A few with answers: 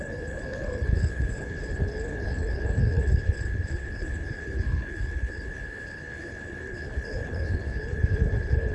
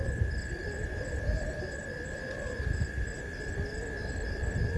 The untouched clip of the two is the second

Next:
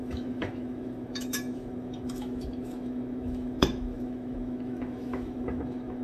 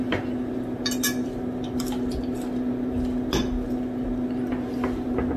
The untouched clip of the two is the second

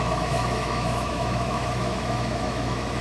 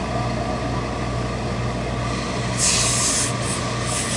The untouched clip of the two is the second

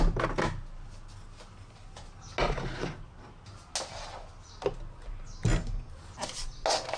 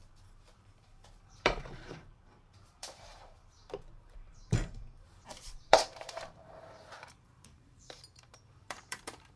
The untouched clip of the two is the first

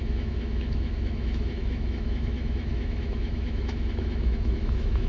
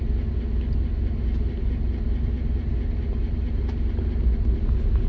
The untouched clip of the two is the second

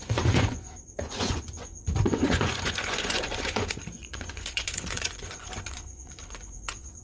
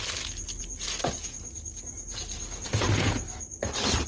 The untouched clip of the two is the second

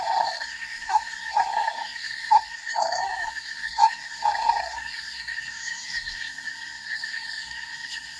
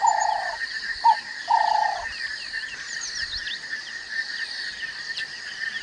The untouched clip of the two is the second